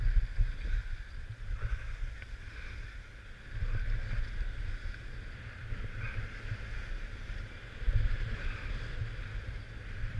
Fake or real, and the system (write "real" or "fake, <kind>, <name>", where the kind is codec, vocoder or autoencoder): real